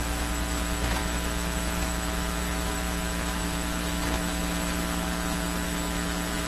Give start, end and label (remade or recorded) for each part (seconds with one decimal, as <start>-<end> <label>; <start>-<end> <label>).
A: 0.0-6.5 remade